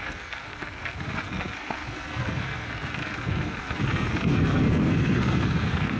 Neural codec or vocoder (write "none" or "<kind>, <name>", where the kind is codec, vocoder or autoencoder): codec, SNAC